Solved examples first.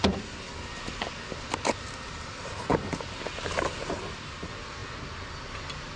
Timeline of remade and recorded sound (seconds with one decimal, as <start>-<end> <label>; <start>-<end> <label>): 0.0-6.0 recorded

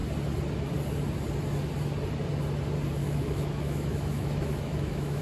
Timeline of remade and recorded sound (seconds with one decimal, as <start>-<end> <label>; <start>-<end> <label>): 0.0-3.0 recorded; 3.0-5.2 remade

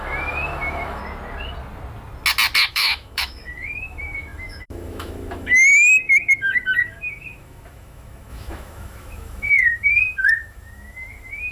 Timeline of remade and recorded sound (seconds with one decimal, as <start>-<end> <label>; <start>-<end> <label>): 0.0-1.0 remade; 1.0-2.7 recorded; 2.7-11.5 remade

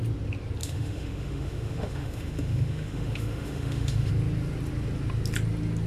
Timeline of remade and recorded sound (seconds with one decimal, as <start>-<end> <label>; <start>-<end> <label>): 0.0-0.6 recorded; 0.6-4.1 remade; 4.1-5.9 recorded